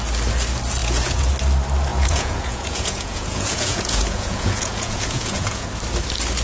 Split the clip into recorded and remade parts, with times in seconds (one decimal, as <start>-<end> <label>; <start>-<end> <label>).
0.0-0.8 recorded; 0.8-1.3 remade; 1.3-1.9 recorded; 1.9-5.7 remade; 5.7-6.4 recorded